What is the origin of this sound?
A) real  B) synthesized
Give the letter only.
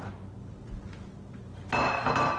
A